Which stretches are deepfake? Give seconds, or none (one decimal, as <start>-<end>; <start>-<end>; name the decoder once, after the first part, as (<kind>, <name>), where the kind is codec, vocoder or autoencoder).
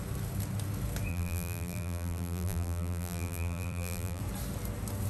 1.1-4.2 (vocoder, BigVGAN v2)